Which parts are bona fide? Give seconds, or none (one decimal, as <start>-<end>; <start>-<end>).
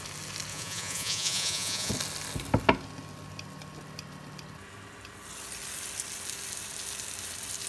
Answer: 0.0-0.5; 1.9-7.7